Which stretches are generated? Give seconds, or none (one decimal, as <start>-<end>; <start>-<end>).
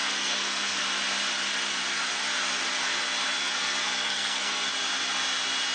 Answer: 0.0-0.8; 3.4-4.7